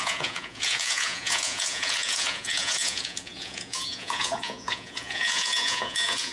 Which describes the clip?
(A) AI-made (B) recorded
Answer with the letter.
A